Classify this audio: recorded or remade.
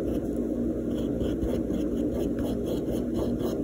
recorded